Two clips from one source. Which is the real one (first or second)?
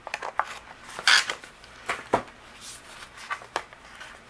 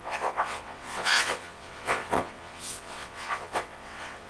first